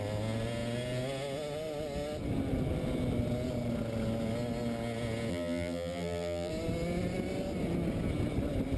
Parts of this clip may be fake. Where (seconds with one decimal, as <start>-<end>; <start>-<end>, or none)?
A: 5.3-6.5